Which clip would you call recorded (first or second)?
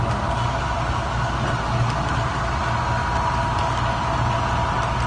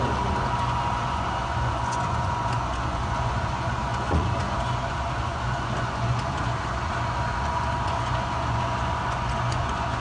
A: first